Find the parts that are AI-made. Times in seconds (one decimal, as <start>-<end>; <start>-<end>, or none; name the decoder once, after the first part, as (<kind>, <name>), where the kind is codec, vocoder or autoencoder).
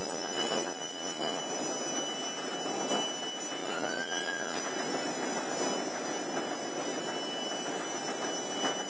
0.0-1.4 (vocoder, Vocos); 3.6-4.6